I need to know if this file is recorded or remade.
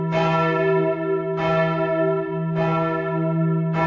recorded